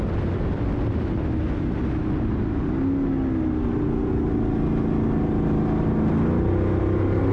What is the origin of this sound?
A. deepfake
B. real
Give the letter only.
B